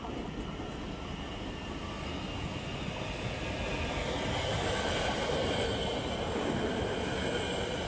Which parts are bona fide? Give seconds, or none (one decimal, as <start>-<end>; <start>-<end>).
0.0-7.9